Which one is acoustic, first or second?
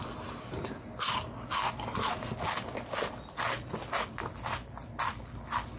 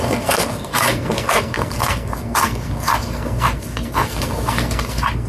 first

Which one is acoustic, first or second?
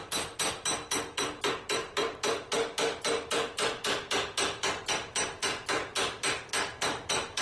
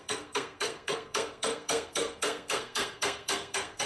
first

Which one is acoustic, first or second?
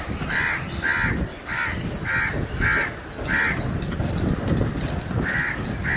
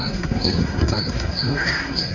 first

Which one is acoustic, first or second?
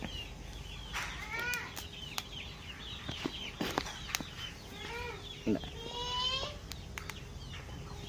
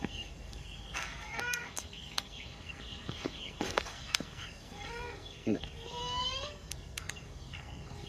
first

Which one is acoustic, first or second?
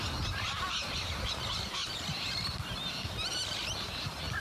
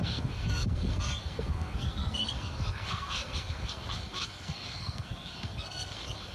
first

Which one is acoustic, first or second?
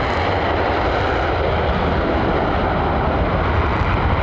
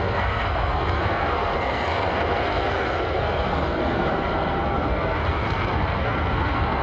first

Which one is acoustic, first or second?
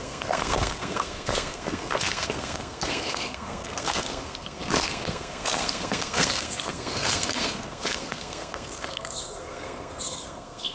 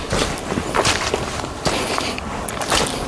second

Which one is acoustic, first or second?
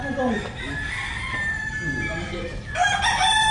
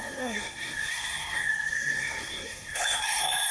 first